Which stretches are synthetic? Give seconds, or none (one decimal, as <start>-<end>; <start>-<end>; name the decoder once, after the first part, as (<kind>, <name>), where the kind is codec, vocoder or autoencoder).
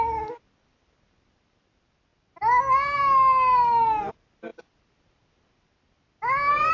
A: none